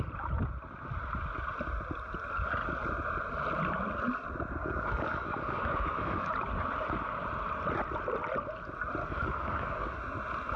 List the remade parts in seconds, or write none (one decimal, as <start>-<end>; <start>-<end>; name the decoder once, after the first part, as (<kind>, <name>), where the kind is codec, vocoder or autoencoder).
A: 4.6-6.3 (codec, DAC); 9.0-10.0